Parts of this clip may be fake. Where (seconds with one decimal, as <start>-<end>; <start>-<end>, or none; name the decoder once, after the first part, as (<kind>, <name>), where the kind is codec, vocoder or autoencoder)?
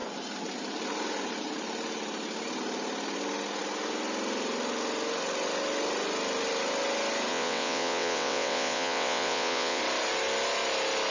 7.3-9.8 (vocoder, WaveNeXt)